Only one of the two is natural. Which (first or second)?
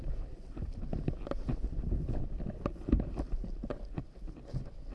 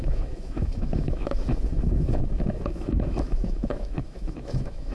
first